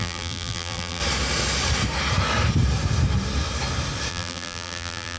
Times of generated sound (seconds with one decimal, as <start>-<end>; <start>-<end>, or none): 0.0-1.0; 4.1-5.2